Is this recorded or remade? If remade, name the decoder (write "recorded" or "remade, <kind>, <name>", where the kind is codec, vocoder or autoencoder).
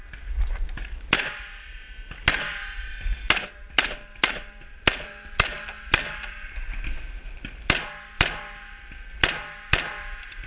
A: recorded